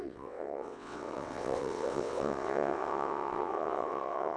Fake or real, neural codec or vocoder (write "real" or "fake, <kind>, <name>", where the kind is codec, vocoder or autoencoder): fake, vocoder, WaveNeXt